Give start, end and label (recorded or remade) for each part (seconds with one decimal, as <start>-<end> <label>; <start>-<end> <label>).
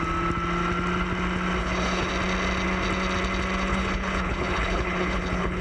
0.0-1.6 recorded; 1.6-2.1 remade; 2.1-3.7 recorded; 3.7-5.6 remade